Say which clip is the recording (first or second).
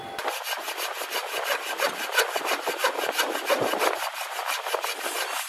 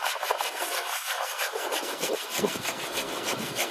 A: first